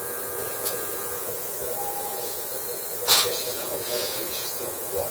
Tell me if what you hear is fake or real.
fake